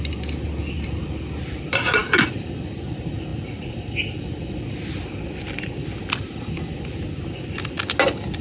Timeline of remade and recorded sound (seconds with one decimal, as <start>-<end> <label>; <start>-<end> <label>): 0.0-8.4 recorded